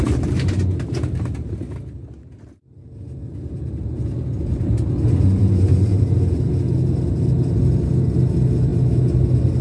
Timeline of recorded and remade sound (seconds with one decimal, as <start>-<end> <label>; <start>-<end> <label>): 0.0-9.6 recorded